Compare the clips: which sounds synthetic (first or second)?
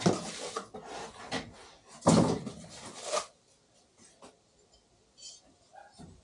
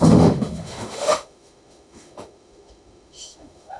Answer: second